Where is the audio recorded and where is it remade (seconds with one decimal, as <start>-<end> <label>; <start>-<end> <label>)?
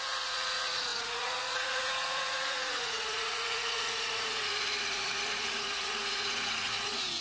0.0-7.2 remade